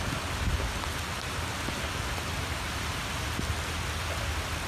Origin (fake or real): real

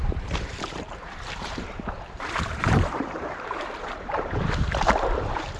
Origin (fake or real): fake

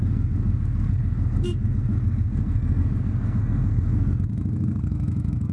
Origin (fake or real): fake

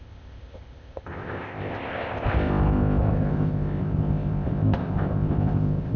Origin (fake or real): fake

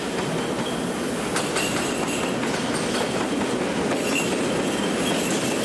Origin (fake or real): real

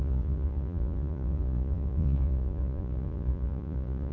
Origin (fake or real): fake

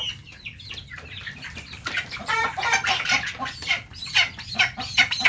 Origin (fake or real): fake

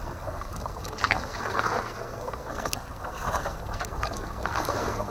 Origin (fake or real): fake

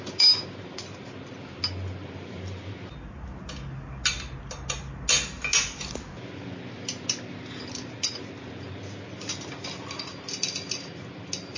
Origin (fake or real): real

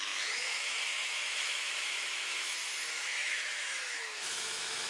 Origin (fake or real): fake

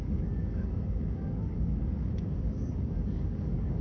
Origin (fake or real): fake